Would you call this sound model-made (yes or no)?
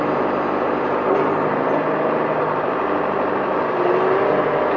no